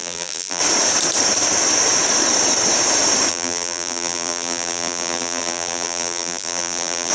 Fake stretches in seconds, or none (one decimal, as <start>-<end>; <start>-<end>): 0.0-0.6; 3.3-7.1